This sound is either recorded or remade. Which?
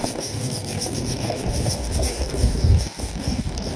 remade